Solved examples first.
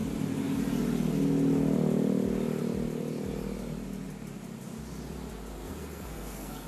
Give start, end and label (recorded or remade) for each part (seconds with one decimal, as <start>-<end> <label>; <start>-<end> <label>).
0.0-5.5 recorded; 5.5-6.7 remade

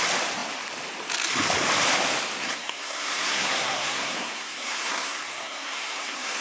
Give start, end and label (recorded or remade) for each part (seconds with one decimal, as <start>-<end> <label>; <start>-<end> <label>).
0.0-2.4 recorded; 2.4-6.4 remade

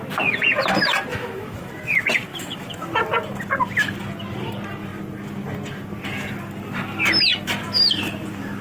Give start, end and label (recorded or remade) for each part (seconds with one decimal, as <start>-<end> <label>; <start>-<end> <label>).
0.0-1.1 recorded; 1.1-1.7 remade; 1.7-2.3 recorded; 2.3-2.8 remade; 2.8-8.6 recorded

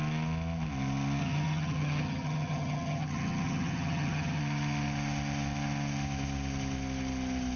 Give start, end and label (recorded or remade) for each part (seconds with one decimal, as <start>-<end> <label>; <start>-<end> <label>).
0.0-1.2 recorded; 1.2-4.4 remade; 4.4-7.6 recorded